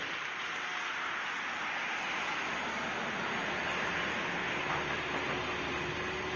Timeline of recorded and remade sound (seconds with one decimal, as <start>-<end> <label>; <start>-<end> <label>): 0.0-6.4 recorded